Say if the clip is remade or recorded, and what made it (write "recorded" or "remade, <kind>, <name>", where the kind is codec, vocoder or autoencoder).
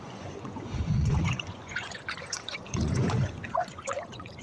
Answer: remade, vocoder, Vocos